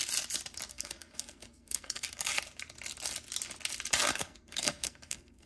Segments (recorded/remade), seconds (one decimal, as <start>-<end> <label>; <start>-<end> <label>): 0.0-0.7 recorded; 0.7-2.4 remade; 2.4-4.1 recorded; 4.1-5.5 remade